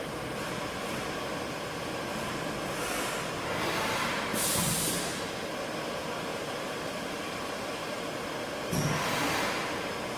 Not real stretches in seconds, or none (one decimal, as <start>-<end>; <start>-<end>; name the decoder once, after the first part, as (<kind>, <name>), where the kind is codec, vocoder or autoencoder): 2.1-2.9 (vocoder, BigVGAN v2); 4.3-5.2; 6.3-8.0